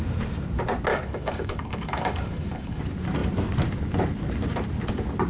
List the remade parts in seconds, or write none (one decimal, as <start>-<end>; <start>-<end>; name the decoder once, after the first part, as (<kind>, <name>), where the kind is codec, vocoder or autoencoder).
0.9-2.8 (codec, DAC)